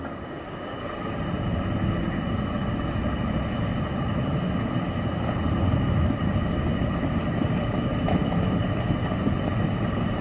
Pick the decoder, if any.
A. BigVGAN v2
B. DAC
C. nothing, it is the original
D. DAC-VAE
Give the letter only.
C